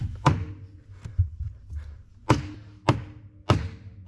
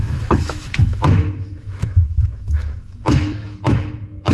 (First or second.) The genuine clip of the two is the first